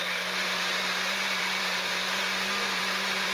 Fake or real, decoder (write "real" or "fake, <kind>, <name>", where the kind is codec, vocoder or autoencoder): fake, vocoder, BigVGAN v2